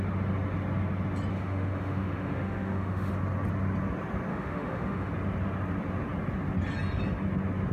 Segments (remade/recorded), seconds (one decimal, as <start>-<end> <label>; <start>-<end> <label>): 0.0-1.3 recorded; 1.3-3.1 remade; 3.1-4.3 recorded; 4.3-5.1 remade; 5.1-7.7 recorded